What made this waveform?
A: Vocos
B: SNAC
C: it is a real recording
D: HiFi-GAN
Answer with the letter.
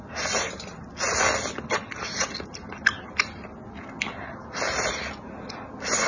C